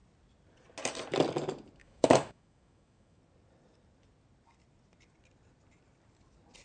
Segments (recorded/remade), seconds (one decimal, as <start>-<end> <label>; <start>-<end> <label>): 0.0-1.8 recorded; 1.8-3.2 remade; 3.2-6.6 recorded